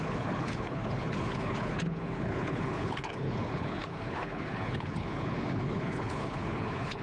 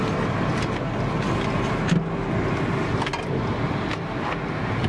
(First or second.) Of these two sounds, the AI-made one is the first